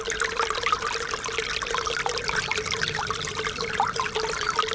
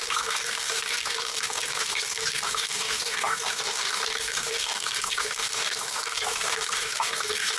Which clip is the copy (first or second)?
second